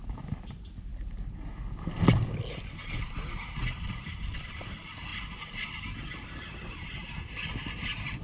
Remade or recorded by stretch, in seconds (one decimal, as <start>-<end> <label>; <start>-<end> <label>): 0.0-8.2 recorded